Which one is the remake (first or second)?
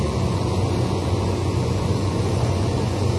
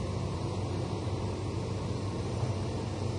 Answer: first